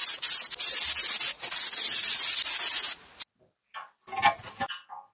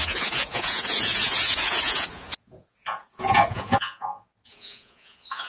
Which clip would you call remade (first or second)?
second